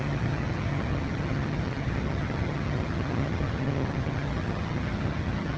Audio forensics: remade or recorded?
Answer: remade